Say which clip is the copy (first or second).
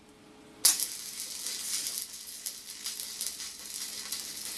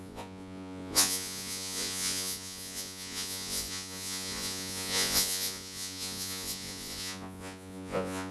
second